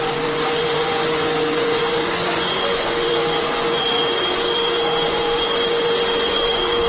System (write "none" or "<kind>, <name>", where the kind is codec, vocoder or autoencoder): vocoder, Vocos